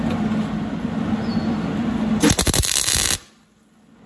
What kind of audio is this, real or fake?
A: real